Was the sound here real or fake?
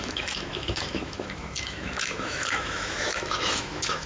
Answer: fake